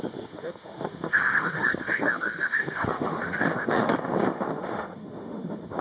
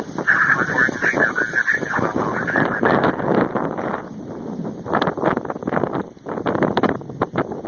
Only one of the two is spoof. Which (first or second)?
first